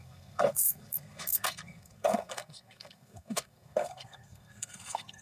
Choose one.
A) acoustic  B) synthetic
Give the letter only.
B